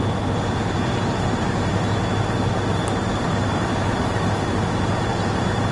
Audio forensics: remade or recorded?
recorded